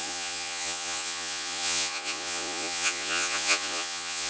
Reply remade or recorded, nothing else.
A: remade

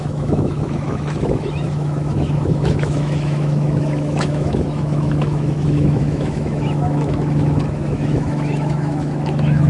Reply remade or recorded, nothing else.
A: remade